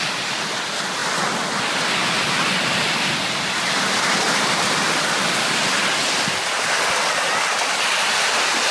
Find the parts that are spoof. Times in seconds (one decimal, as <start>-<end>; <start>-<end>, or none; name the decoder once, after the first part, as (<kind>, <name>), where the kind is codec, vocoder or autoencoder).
none